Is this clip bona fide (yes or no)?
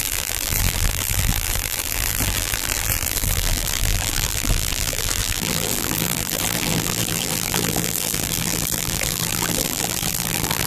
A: no